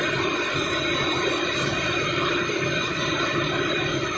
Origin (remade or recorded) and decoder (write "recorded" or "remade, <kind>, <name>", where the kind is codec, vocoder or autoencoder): recorded